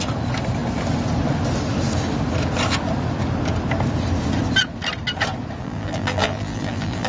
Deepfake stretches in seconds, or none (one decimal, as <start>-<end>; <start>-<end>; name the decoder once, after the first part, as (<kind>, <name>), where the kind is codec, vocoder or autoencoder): 5.6-7.1 (vocoder, BigVGAN v2)